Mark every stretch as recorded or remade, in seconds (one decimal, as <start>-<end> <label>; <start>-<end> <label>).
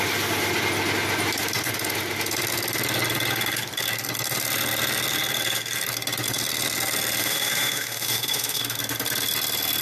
0.0-7.2 recorded; 7.2-8.8 remade; 8.8-9.8 recorded